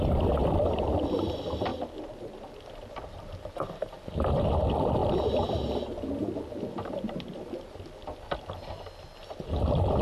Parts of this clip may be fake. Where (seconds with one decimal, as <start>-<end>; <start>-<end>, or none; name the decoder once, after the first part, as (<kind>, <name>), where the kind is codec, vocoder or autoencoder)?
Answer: none